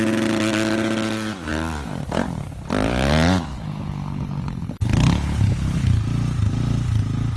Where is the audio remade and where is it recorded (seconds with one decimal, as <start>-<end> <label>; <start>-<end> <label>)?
0.0-3.5 recorded; 3.5-5.9 remade; 5.9-7.4 recorded